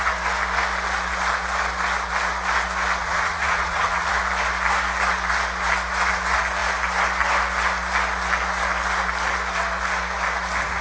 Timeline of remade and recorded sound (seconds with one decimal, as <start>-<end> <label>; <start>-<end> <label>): 0.0-3.0 recorded; 3.0-4.1 remade; 4.1-10.8 recorded